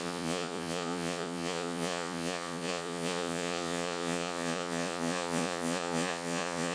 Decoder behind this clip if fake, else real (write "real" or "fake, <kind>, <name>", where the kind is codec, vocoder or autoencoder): fake, vocoder, Vocos